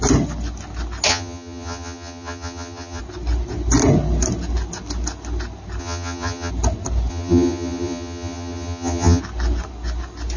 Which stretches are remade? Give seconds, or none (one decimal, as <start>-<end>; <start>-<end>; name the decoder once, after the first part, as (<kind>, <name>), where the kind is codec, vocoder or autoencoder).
1.1-3.0 (vocoder, HiFi-GAN); 5.8-6.5; 7.1-9.2